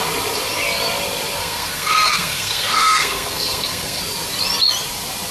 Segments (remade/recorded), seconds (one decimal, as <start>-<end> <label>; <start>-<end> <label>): 0.0-1.4 recorded; 1.4-4.0 remade; 4.0-5.3 recorded